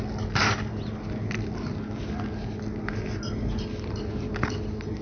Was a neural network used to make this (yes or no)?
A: no